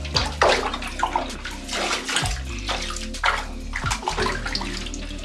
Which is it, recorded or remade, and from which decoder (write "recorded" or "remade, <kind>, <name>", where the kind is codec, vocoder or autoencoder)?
recorded